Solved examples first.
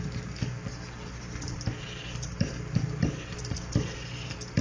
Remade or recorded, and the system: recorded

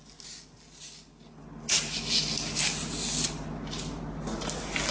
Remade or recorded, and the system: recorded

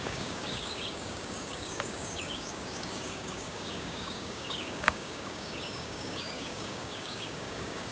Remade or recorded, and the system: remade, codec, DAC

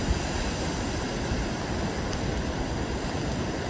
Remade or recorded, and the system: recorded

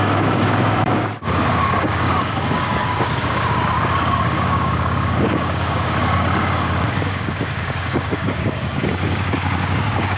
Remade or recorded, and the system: remade, codec, DAC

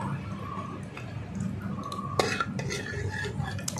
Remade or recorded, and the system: recorded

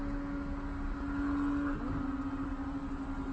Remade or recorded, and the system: recorded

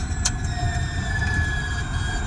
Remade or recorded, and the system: recorded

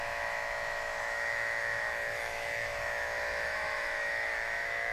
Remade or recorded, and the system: remade, autoencoder, DAC-VAE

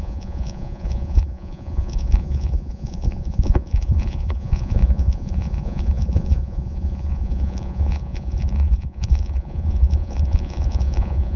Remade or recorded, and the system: remade, vocoder, Vocos